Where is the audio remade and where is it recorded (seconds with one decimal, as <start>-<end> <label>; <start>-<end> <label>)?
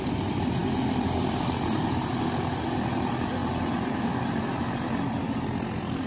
0.0-6.1 recorded